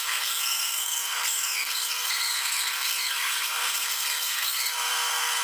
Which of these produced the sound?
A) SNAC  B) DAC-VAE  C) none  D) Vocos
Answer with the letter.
A